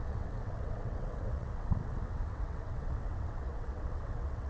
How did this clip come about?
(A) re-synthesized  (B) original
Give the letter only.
A